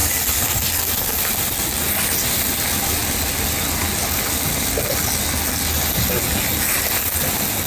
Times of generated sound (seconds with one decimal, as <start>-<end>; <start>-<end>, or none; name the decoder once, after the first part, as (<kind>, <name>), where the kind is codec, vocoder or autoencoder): none